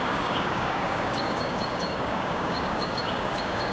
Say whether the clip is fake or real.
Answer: fake